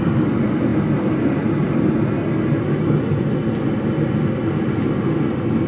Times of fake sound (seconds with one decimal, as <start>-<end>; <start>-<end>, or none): none